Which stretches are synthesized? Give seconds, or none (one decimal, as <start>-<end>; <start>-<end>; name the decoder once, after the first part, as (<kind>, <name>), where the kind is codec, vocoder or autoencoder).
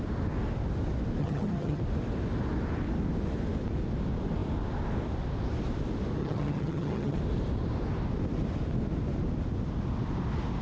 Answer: 1.2-1.8 (vocoder, HiFi-GAN); 6.2-7.2